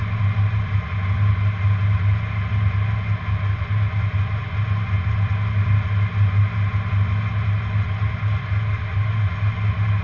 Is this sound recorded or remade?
recorded